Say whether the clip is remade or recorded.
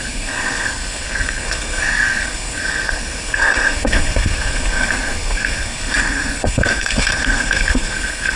remade